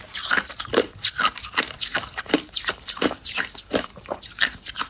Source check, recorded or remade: remade